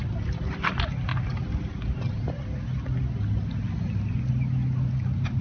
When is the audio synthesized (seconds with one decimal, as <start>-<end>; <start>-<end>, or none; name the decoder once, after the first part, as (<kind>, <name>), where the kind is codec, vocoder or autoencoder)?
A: none